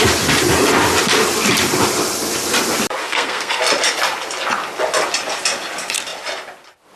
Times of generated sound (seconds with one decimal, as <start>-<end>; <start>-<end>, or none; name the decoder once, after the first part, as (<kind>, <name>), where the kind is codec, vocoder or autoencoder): 3.0-3.6 (codec, SNAC)